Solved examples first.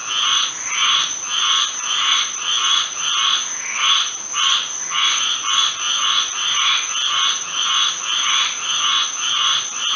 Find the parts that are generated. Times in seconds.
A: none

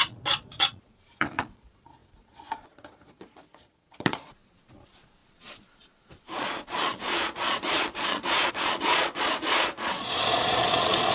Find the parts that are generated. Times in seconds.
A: 0.0-11.1 (vocoder, Vocos)

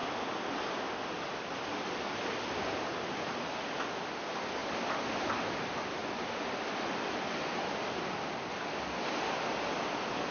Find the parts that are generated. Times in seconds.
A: none

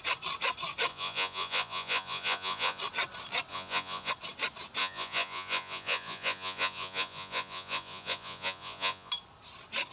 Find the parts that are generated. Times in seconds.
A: 0.9-2.8 (vocoder, Vocos); 3.5-4.1; 4.8-9.1

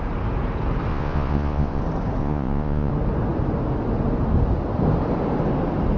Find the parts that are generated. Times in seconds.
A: 0.9-1.8 (vocoder, Vocos); 2.2-2.9

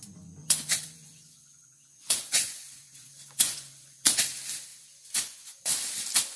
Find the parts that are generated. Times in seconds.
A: 0.4-4.2 (vocoder, Vocos); 4.7-5.6